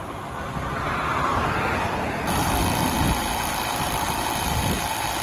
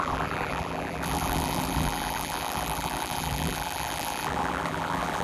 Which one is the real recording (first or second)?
first